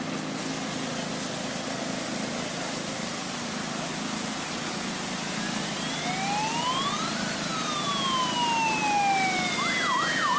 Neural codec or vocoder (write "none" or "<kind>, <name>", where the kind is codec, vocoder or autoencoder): none